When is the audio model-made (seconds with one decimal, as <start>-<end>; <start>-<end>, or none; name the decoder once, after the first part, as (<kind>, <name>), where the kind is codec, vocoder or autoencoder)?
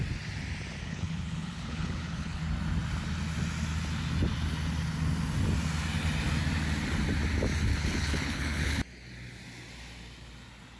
0.8-2.4 (codec, HILCodec); 7.7-8.8